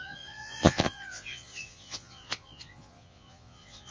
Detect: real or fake fake